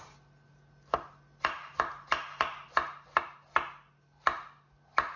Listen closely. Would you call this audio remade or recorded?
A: recorded